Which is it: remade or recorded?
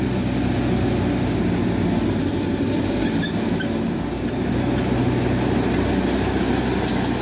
recorded